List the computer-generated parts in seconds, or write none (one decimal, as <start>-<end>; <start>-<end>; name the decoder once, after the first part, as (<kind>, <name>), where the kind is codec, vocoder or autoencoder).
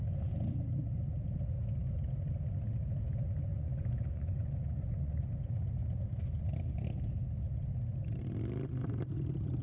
3.5-5.3 (vocoder, Vocos)